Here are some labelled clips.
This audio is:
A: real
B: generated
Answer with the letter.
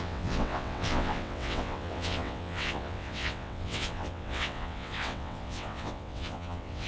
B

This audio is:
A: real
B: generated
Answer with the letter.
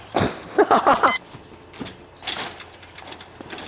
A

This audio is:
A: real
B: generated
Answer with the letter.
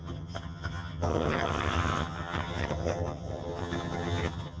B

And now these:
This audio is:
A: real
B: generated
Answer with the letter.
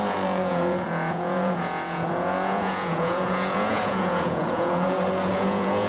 B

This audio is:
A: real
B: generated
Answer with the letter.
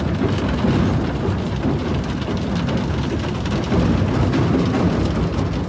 A